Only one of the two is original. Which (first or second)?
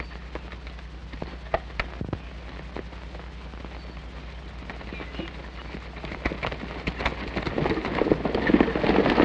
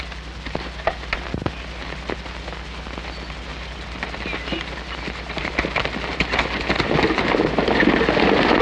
first